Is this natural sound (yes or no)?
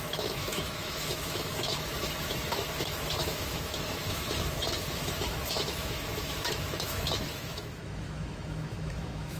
no